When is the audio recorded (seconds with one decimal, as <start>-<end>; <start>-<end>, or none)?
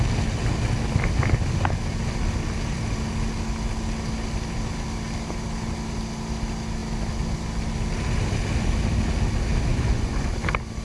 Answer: 0.0-9.7; 10.4-10.8